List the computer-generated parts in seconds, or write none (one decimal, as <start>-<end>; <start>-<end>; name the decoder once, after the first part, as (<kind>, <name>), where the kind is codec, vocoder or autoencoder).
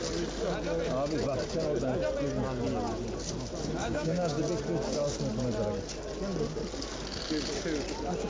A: 3.8-4.4 (codec, DAC)